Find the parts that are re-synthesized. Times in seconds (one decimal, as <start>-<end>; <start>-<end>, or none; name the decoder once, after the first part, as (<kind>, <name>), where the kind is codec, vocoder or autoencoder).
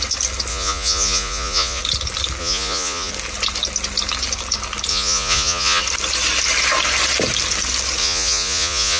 0.5-1.8 (vocoder, Vocos); 2.4-3.1; 4.9-5.8; 8.0-9.0